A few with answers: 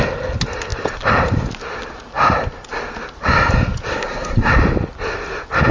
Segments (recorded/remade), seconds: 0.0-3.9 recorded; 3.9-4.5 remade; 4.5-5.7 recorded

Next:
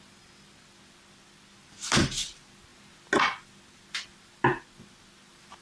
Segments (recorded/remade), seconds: 0.0-1.6 recorded; 1.6-2.3 remade; 2.3-5.6 recorded

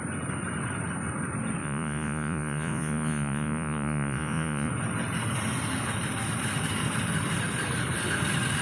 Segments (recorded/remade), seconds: 0.0-1.6 recorded; 1.6-4.7 remade; 4.7-8.6 recorded

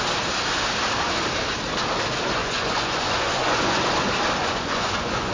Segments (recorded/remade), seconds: 0.0-2.4 recorded; 2.4-3.8 remade; 3.8-4.4 recorded; 4.4-5.3 remade

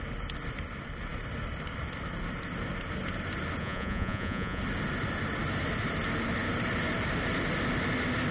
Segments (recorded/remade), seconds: 0.0-3.6 recorded; 3.6-4.6 remade; 4.6-8.3 recorded

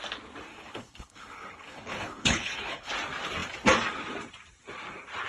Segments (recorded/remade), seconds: 0.0-0.5 recorded; 0.5-2.9 remade; 2.9-5.3 recorded

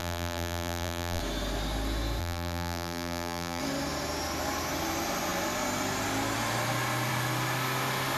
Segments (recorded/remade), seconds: 0.0-1.2 remade; 1.2-2.2 recorded; 2.2-3.6 remade; 3.6-8.2 recorded